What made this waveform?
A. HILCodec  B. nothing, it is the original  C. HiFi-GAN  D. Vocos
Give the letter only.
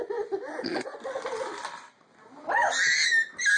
B